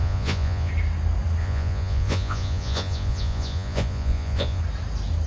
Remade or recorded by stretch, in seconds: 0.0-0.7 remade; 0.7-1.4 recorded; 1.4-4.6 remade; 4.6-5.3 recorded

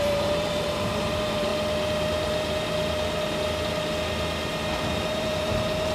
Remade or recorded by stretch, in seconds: 0.0-1.5 remade; 1.5-5.0 recorded; 5.0-5.9 remade

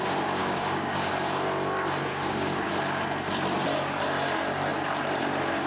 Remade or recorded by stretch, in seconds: 0.0-0.4 recorded; 0.4-1.1 remade; 1.1-2.1 recorded; 2.1-2.7 remade; 2.7-5.7 recorded

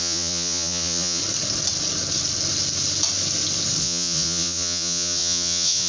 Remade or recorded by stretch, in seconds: 0.0-1.2 remade; 1.2-3.8 recorded; 3.8-5.9 remade